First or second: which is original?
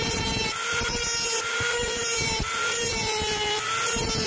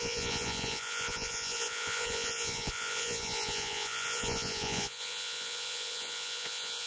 first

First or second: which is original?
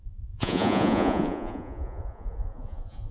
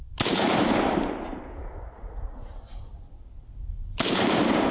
second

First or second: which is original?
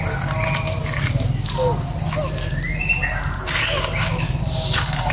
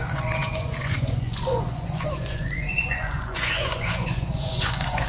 first